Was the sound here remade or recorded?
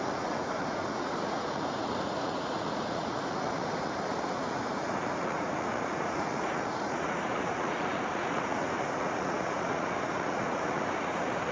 remade